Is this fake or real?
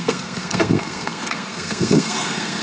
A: fake